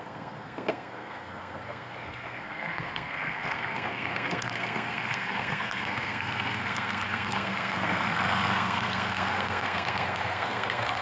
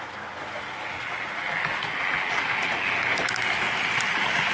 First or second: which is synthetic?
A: first